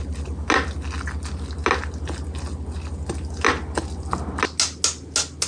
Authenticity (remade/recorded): recorded